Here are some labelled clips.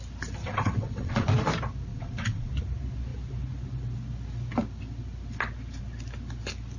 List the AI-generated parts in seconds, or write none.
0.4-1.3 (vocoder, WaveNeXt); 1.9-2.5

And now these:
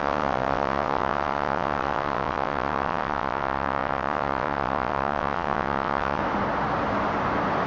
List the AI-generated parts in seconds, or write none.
0.0-6.2 (vocoder, WaveNeXt)

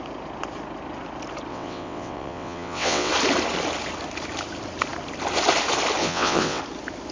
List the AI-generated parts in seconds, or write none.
1.5-3.1 (vocoder, WaveNeXt); 6.0-6.6

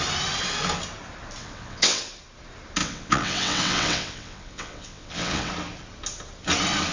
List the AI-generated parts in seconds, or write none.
1.4-2.0 (vocoder, WaveNeXt); 2.8-5.5